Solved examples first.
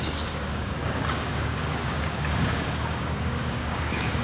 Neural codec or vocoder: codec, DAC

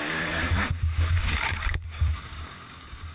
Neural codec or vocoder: codec, DAC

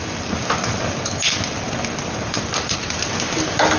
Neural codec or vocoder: none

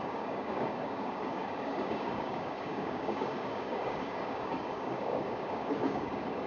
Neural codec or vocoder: codec, DAC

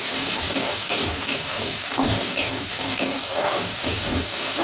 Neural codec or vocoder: codec, DAC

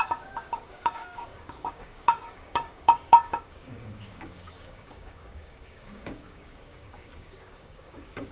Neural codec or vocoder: codec, DAC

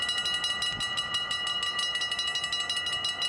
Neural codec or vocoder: none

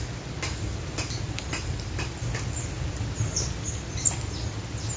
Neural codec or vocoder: none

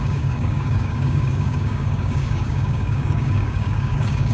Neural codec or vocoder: codec, DAC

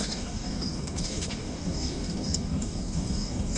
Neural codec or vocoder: codec, DAC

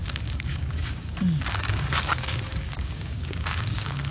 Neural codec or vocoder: codec, DAC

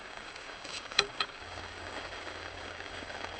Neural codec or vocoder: codec, DAC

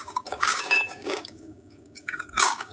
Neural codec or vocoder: codec, DAC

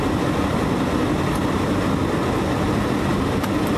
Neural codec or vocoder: none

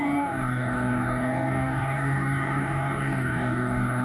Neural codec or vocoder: codec, DAC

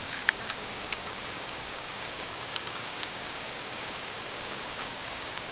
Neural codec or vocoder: codec, DAC